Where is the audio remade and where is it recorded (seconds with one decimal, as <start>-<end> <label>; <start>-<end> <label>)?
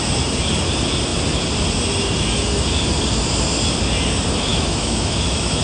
0.0-4.5 recorded; 4.5-5.6 remade